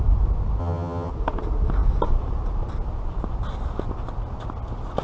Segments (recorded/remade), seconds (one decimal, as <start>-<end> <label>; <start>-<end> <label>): 0.0-0.6 recorded; 0.6-1.1 remade; 1.1-5.0 recorded